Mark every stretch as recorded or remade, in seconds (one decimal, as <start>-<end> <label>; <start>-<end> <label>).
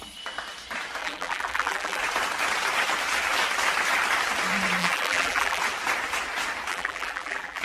0.0-1.0 recorded; 1.0-2.0 remade; 2.0-4.8 recorded; 4.8-5.6 remade; 5.6-6.7 recorded; 6.7-7.6 remade